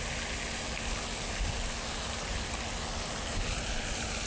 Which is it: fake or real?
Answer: real